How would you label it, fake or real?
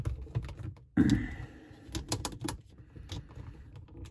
real